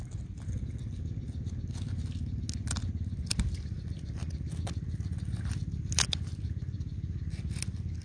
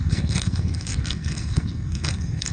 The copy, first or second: second